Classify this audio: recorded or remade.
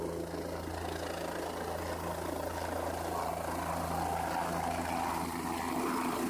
recorded